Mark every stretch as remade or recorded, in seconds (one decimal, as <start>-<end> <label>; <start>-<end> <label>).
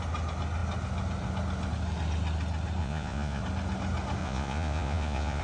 0.0-2.8 recorded; 2.8-3.4 remade; 3.4-4.2 recorded; 4.2-5.4 remade